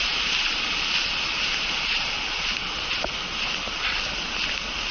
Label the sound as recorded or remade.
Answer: recorded